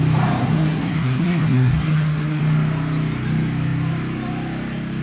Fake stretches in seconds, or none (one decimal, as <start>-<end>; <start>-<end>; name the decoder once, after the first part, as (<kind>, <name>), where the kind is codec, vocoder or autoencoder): 0.4-2.4 (codec, SNAC)